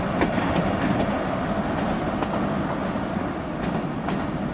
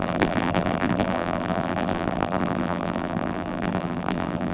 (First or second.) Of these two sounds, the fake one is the second